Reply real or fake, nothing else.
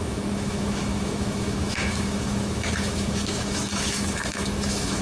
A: fake